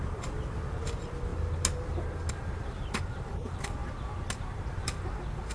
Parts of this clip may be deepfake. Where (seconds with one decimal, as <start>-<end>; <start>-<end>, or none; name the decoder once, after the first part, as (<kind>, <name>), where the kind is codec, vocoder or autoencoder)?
0.0-1.3 (vocoder, BigVGAN v2); 2.3-3.8; 4.5-5.5